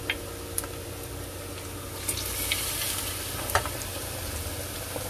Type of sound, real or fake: real